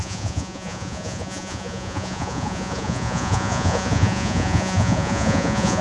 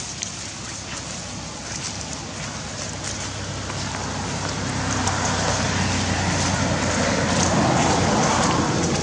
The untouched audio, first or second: second